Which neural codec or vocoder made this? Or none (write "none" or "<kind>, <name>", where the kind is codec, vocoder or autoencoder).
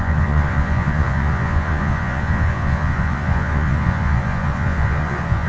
vocoder, Vocos